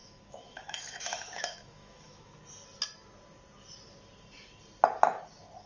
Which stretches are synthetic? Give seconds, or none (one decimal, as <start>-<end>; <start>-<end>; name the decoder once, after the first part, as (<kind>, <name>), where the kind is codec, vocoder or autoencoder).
0.0-2.4 (autoencoder, DAC-VAE)